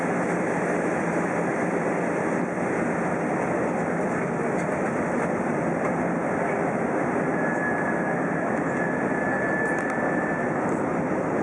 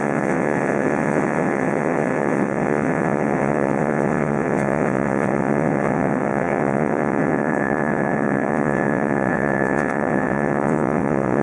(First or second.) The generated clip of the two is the second